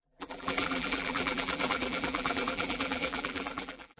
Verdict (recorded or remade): remade